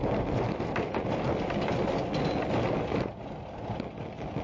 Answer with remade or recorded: recorded